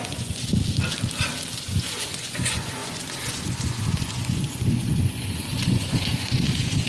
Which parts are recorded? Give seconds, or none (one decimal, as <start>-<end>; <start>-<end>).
0.5-1.6